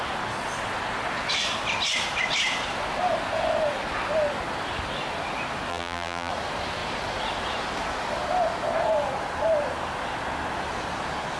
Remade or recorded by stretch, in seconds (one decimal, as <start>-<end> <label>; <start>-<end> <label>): 0.0-5.7 recorded; 5.7-6.3 remade; 6.3-11.4 recorded